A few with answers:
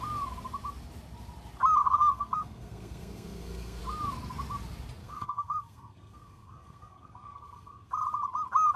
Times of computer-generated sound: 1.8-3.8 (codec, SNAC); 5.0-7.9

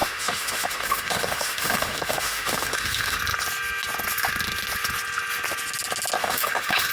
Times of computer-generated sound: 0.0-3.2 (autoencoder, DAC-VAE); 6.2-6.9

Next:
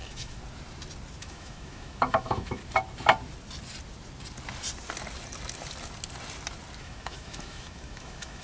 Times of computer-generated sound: 0.0-0.4 (autoencoder, DAC-VAE); 1.2-2.6; 6.8-8.4

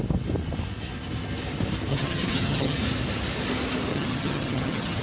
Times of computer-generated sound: 1.9-2.8 (vocoder, HiFi-GAN); 3.9-5.0

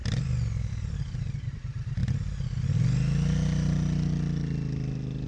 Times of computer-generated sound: 0.7-2.0 (vocoder, BigVGAN v2)

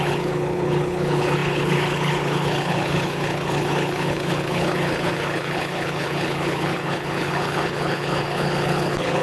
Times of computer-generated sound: 0.0-9.2 (codec, HILCodec)